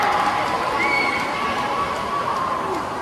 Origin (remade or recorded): recorded